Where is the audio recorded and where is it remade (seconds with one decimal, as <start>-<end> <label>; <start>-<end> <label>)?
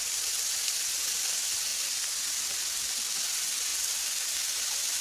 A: 0.0-5.0 recorded